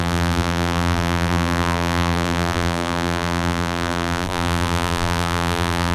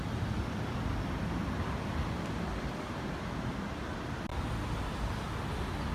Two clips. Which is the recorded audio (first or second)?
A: second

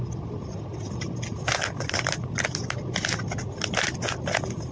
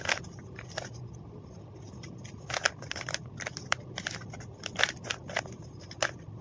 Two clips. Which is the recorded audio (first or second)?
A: first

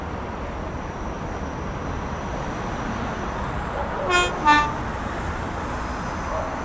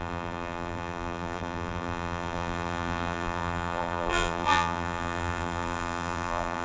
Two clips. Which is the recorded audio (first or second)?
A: first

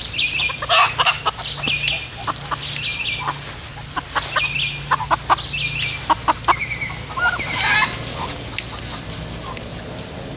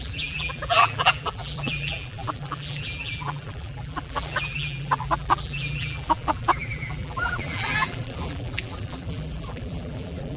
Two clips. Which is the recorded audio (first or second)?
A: first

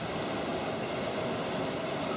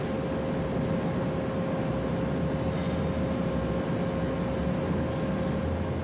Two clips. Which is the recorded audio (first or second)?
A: second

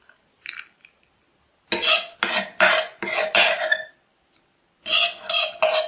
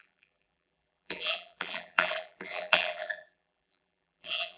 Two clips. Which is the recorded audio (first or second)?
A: first